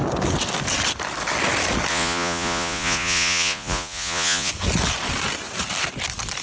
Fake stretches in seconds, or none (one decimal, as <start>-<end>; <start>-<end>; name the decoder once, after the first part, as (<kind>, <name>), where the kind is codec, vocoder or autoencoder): 1.9-4.5 (vocoder, Vocos)